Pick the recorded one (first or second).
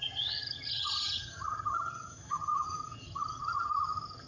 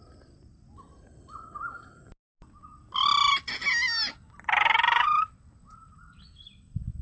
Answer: second